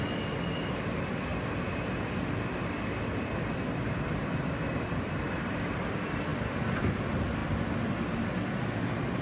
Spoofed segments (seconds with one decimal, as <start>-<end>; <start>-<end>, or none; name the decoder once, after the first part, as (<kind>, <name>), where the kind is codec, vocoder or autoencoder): 0.0-1.3 (vocoder, BigVGAN v2); 3.2-7.4

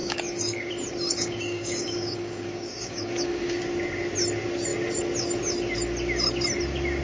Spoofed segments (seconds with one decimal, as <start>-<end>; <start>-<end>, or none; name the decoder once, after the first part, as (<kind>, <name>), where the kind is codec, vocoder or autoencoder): 0.0-0.7 (codec, DAC); 1.1-3.6